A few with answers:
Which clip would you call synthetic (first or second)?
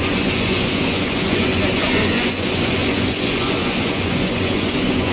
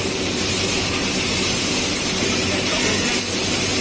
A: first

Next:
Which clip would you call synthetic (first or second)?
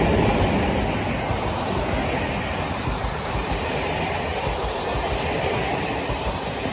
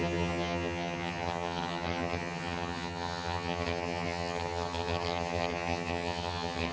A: second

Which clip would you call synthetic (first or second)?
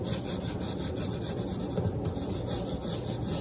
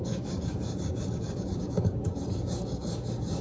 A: second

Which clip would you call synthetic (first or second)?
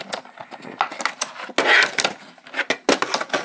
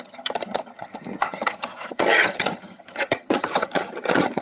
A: second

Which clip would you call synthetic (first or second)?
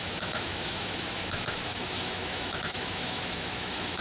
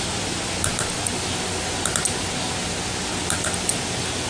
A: first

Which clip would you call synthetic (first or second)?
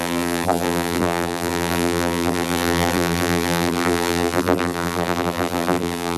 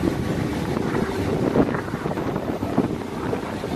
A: first